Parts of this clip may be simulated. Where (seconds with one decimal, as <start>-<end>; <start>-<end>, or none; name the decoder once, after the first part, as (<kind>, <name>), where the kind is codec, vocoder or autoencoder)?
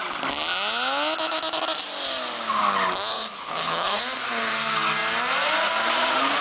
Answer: 3.1-4.0 (codec, HILCodec)